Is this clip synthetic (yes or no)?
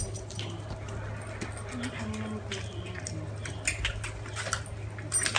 no